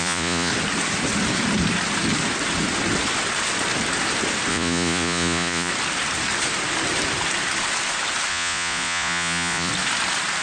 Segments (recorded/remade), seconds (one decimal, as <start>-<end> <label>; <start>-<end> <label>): 0.0-0.5 remade; 0.5-4.5 recorded; 4.5-5.7 remade; 5.7-8.3 recorded; 8.3-9.7 remade; 9.7-10.4 recorded